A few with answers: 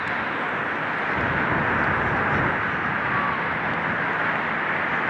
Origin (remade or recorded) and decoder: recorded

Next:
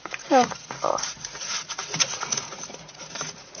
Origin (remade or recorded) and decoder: remade, vocoder, Vocos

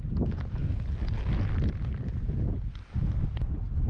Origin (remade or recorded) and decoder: recorded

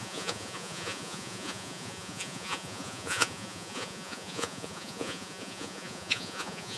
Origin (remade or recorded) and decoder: remade, vocoder, Vocos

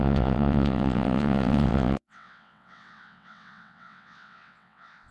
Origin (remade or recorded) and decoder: remade, vocoder, WaveNeXt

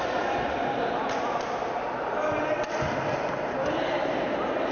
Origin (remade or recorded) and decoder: recorded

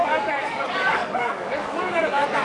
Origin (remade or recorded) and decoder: remade, codec, DAC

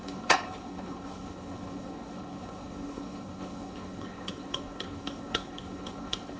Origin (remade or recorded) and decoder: remade, codec, HILCodec